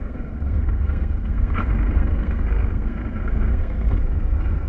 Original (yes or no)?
no